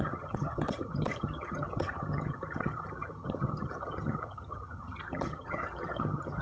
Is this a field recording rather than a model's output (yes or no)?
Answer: no